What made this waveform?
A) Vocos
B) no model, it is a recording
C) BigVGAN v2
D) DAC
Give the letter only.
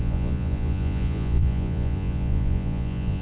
A